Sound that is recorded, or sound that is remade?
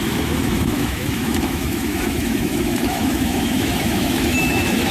remade